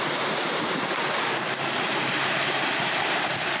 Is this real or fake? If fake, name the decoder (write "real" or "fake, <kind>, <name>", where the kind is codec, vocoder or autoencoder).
real